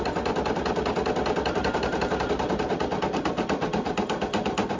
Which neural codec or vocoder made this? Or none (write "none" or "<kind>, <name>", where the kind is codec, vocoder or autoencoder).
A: none